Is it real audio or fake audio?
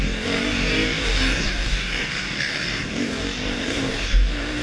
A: fake